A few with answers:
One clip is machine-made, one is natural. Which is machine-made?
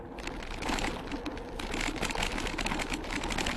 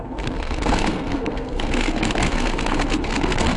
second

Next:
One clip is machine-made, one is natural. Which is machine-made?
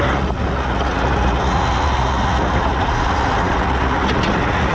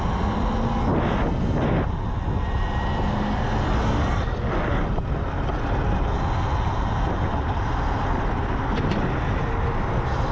first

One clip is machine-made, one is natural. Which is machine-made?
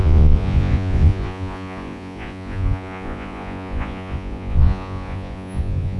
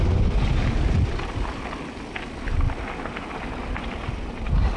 first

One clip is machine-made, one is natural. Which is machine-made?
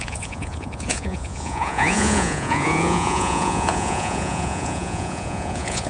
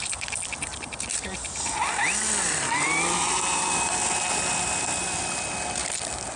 first